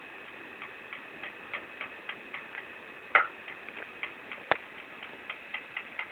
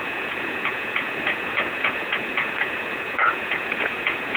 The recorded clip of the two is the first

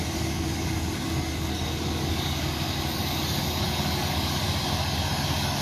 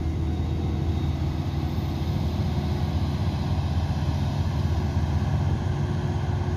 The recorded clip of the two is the second